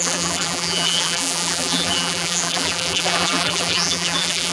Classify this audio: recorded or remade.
remade